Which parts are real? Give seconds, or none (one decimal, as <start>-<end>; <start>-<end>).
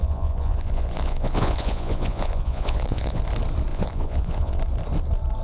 3.2-3.7; 4.6-5.4